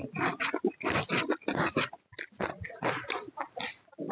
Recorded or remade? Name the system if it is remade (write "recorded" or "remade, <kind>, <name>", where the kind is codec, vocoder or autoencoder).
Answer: recorded